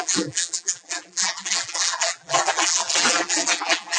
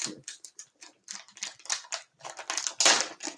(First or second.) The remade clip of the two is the first